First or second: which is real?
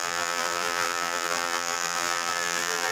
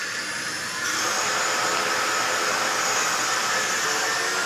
second